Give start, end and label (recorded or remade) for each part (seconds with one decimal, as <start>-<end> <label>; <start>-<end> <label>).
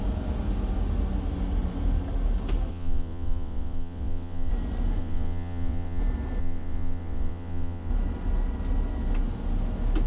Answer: 0.0-2.7 recorded; 2.7-4.5 remade; 4.5-5.0 recorded; 5.0-6.0 remade; 6.0-6.4 recorded; 6.4-7.9 remade; 7.9-10.1 recorded